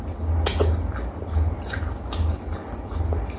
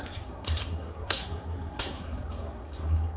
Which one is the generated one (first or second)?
second